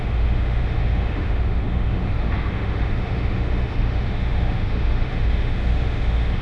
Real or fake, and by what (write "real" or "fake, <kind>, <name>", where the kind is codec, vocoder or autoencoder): fake, autoencoder, DAC-VAE